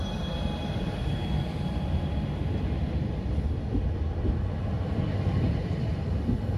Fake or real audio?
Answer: real